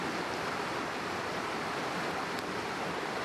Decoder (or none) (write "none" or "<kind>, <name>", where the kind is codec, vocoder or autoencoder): none